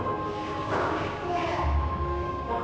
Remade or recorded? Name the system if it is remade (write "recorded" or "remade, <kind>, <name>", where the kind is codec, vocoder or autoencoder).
remade, codec, DAC